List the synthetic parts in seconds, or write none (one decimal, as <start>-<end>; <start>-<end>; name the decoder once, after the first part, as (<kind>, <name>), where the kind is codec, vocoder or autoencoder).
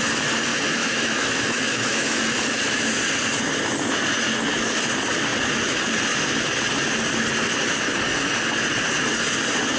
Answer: 0.5-2.2 (autoencoder, DAC-VAE)